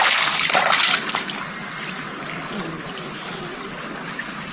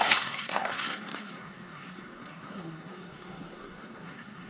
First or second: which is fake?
second